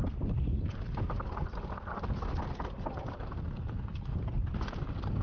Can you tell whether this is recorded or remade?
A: recorded